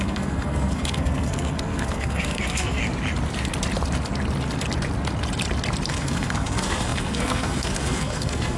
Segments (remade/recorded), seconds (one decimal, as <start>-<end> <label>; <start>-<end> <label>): 0.0-2.8 remade; 2.8-5.9 recorded; 5.9-8.6 remade